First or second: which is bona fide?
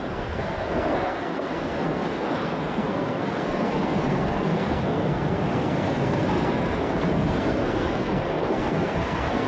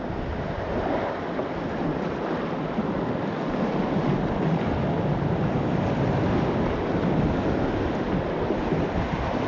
second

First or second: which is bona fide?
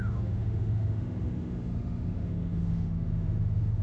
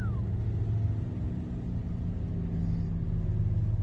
second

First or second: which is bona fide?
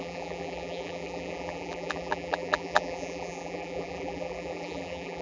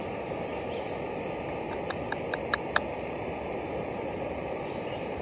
second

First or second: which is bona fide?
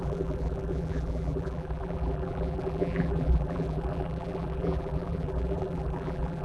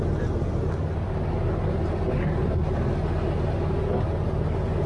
second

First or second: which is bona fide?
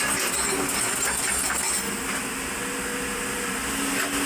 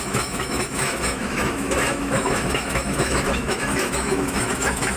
first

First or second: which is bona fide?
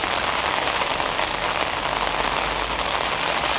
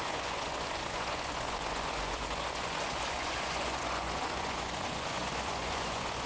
first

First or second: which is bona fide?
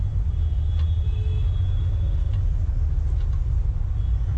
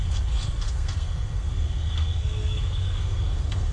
first